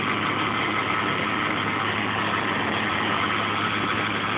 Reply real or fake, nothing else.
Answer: real